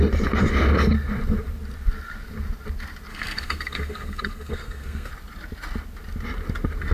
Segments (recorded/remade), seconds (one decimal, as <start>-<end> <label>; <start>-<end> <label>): 0.0-3.1 recorded; 3.1-5.1 remade; 5.1-6.9 recorded